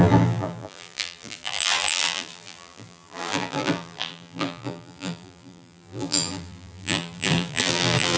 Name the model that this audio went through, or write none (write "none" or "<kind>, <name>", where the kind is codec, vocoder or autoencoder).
vocoder, BigVGAN v2